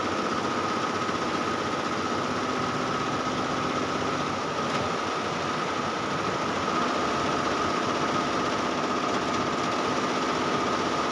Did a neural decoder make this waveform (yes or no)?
no